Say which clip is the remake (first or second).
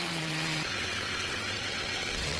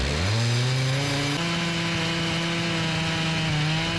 first